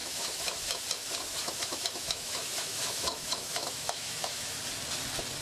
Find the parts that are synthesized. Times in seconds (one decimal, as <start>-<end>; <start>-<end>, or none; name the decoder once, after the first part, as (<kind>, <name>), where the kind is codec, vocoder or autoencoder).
0.0-0.8 (autoencoder, DAC-VAE); 1.4-4.6